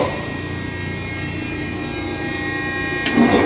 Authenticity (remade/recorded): recorded